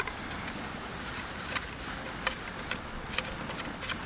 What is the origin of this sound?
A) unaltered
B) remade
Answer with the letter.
A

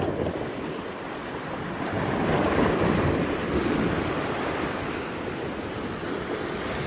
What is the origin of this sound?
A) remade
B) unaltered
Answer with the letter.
B